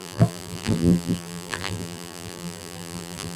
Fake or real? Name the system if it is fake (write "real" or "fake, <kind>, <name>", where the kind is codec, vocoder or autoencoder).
fake, vocoder, BigVGAN v2